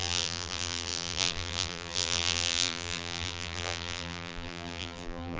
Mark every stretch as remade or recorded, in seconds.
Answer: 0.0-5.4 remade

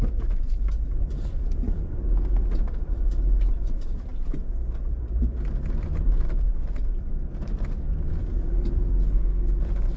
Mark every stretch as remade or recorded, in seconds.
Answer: 0.0-4.1 remade; 4.1-4.9 recorded; 4.9-10.0 remade

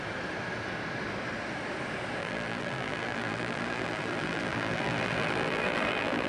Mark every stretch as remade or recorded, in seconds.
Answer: 0.0-2.2 recorded; 2.2-6.3 remade

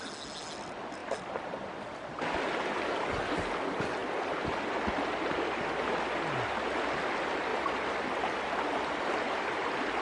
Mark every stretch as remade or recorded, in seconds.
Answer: 0.0-1.0 recorded; 1.0-2.5 remade; 2.5-10.0 recorded

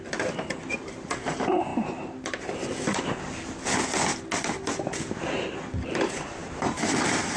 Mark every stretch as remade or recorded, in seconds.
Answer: 0.0-7.4 recorded

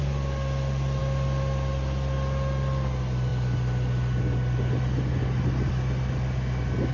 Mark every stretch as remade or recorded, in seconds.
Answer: 0.0-6.9 recorded